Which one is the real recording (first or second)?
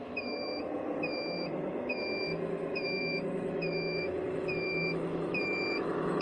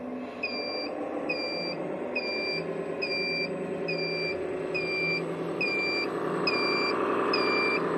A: second